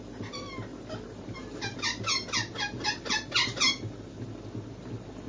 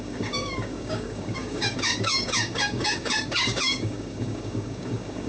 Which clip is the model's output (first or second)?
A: second